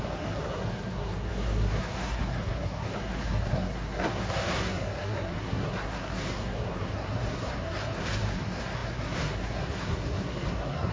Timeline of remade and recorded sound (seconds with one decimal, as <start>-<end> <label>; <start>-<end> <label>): 0.0-10.9 remade